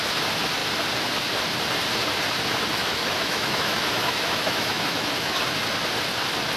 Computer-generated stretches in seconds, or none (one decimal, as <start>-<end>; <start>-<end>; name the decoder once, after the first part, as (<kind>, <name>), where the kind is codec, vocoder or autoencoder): 2.8-5.4 (autoencoder, DAC-VAE)